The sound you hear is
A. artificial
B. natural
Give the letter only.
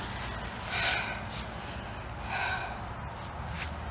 B